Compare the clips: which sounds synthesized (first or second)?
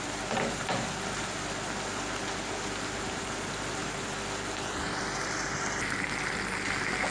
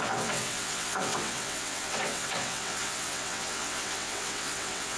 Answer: second